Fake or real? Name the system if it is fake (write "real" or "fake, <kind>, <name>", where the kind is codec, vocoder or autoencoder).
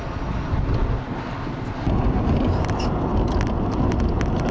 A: real